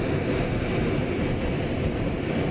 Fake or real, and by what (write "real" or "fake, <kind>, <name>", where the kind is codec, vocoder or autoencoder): real